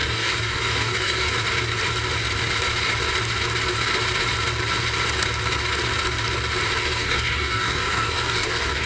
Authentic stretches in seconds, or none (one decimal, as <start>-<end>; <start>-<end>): 1.3-6.8